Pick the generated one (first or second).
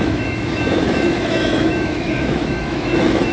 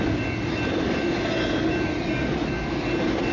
first